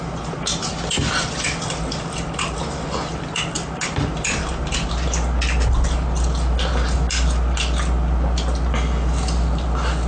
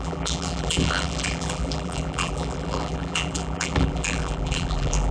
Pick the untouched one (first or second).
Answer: first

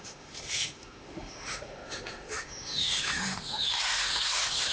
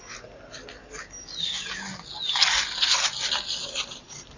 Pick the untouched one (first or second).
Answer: second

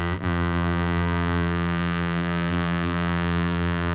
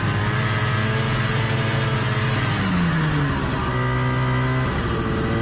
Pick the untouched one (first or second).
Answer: second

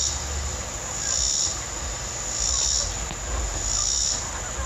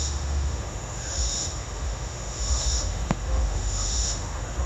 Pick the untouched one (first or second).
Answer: first